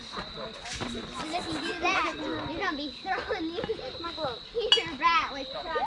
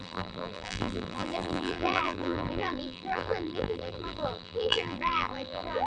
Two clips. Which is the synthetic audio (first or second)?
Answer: second